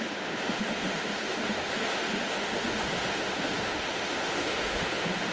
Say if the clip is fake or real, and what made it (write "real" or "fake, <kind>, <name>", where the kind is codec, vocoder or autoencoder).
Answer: fake, autoencoder, DAC-VAE